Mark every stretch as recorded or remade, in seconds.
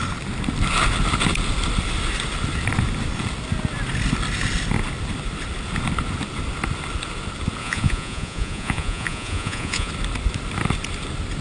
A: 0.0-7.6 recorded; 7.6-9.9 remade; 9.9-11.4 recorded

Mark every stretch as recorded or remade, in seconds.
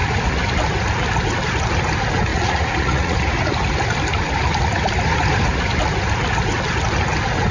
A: 0.0-2.3 recorded; 2.3-3.2 remade; 3.2-7.5 recorded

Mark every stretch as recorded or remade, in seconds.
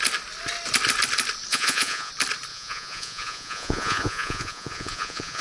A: 0.0-1.5 recorded; 1.5-2.1 remade; 2.1-2.5 recorded; 2.5-5.4 remade